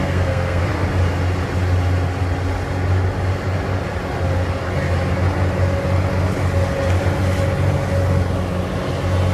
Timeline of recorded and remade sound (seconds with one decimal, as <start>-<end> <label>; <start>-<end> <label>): 0.0-0.6 remade; 0.6-9.3 recorded